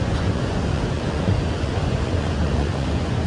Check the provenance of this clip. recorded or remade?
remade